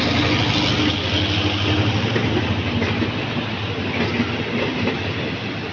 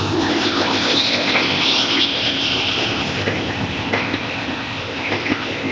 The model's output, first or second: second